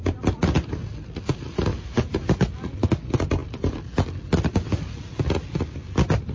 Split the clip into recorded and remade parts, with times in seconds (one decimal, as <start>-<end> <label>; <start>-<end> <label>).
0.0-6.3 recorded